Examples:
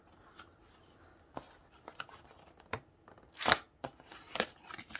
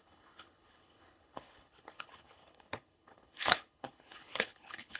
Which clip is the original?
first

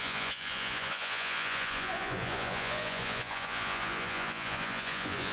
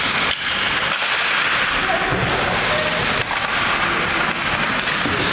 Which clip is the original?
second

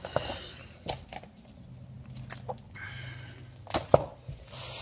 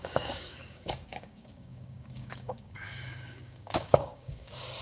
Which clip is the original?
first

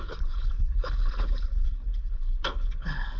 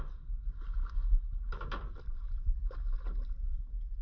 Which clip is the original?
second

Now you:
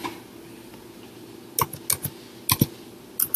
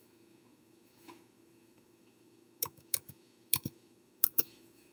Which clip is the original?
first